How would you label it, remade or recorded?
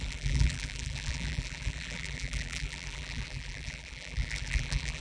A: remade